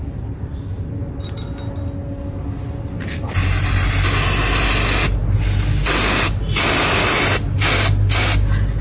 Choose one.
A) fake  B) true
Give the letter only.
B